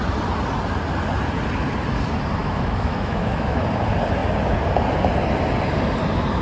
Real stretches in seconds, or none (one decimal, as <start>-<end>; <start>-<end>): 0.0-2.4; 3.6-6.4